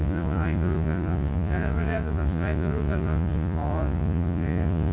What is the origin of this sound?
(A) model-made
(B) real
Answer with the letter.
A